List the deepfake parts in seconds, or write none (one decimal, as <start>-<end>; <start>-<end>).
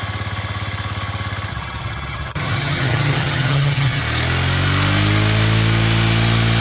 1.5-4.0